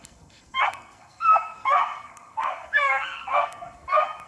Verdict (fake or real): fake